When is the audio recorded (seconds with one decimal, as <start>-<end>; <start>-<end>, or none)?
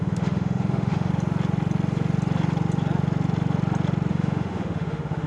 1.1-4.1